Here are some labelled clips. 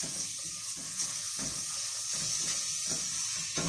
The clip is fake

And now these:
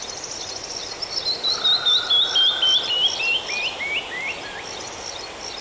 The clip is real